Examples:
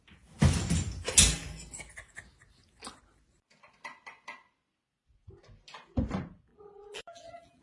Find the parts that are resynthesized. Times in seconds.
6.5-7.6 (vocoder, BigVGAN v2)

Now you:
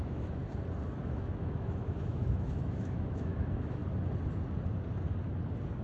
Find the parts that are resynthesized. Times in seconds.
0.0-0.4 (autoencoder, DAC-VAE); 1.0-3.8

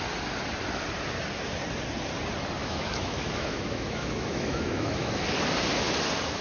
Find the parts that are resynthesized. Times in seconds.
2.6-5.2 (autoencoder, DAC-VAE)

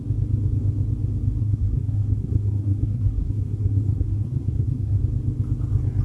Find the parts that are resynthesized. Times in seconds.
1.4-5.0 (codec, SNAC)